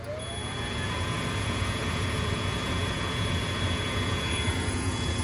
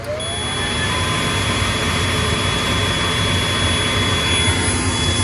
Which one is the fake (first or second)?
first